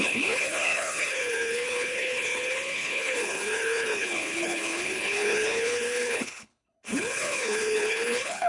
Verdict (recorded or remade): remade